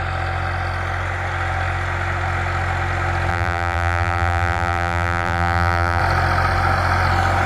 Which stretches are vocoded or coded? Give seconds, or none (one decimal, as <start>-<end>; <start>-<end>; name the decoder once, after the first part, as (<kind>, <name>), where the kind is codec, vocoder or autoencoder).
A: 3.3-6.0 (vocoder, BigVGAN v2)

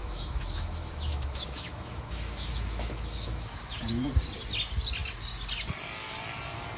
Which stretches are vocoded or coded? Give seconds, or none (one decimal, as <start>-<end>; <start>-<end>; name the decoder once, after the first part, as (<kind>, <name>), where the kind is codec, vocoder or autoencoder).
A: 0.0-3.8 (autoencoder, DAC-VAE)

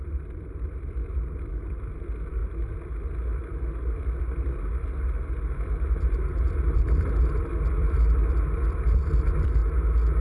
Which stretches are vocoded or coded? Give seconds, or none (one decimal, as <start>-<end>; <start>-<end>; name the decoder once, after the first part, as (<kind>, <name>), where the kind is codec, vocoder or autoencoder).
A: 0.0-2.4 (vocoder, BigVGAN v2); 4.2-9.6

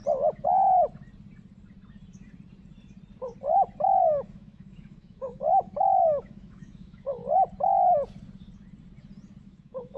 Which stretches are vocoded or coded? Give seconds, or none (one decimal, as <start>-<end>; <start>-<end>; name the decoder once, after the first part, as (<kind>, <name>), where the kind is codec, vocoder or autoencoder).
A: 4.0-7.2 (autoencoder, DAC-VAE); 9.4-10.0

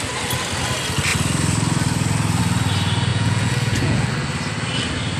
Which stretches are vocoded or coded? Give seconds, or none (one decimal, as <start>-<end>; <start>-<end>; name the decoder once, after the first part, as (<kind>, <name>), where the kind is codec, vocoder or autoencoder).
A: 3.1-4.1 (vocoder, Vocos)

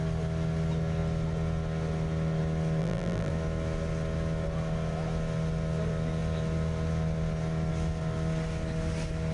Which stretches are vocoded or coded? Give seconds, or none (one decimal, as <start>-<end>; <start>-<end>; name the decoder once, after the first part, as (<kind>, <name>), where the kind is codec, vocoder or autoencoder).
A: 2.8-3.3 (vocoder, BigVGAN v2)

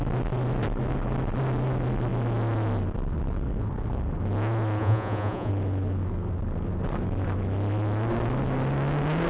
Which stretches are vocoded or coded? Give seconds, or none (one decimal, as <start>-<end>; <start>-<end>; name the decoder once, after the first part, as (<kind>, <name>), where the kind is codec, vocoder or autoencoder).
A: 4.8-5.5 (vocoder, Vocos)